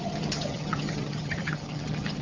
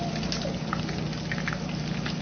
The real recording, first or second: second